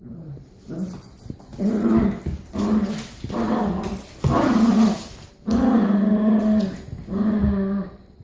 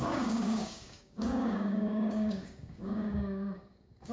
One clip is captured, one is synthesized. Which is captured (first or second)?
first